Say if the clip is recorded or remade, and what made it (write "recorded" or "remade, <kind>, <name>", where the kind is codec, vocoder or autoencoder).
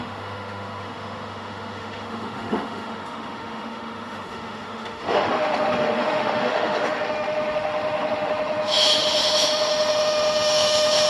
remade, autoencoder, DAC-VAE